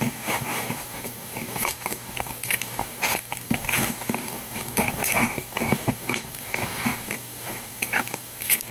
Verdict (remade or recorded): remade